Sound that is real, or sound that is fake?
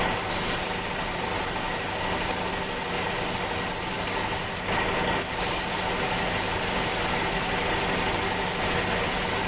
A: real